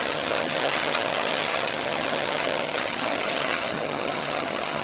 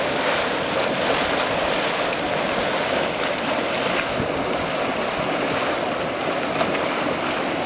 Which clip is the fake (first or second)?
first